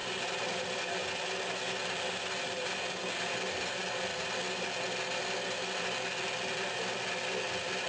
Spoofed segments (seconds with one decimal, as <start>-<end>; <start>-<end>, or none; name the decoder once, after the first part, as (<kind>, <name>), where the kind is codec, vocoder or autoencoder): none